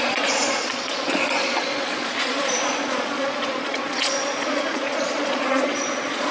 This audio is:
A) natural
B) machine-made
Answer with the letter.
B